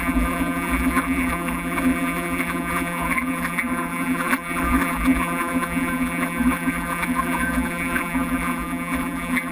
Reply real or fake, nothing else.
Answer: fake